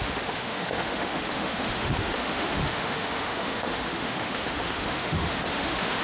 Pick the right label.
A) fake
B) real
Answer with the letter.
A